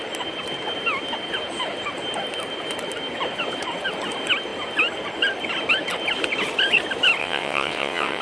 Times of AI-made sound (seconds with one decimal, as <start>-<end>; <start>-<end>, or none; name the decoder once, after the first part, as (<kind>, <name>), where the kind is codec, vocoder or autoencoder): 7.2-8.2 (vocoder, WaveNeXt)